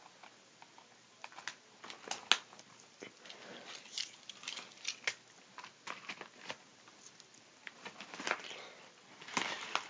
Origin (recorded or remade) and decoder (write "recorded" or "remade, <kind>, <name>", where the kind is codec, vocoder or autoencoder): recorded